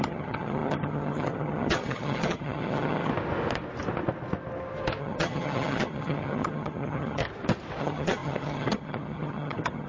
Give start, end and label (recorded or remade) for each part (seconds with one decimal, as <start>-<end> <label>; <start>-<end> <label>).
0.0-3.1 remade; 3.1-5.0 recorded; 5.0-7.2 remade; 7.2-7.8 recorded; 7.8-9.9 remade